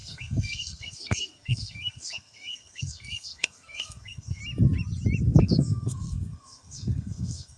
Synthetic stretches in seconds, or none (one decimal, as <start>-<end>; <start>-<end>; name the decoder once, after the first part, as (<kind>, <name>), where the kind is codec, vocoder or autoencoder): 0.0-4.4 (codec, SNAC); 5.4-7.6